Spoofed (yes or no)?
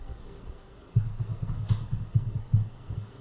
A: yes